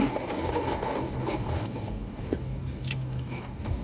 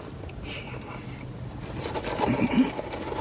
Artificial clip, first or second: first